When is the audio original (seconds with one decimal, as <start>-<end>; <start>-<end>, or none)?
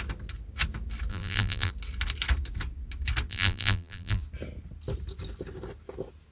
0.0-1.1; 1.7-3.3; 4.2-6.3